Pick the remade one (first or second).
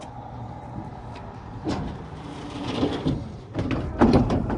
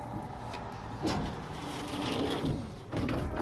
first